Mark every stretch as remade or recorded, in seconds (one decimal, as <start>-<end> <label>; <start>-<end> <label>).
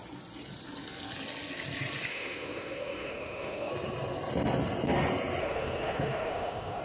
0.0-2.1 recorded; 2.1-3.7 remade; 3.7-5.4 recorded; 5.4-6.8 remade